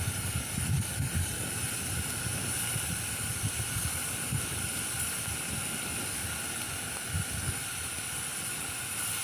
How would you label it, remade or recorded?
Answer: recorded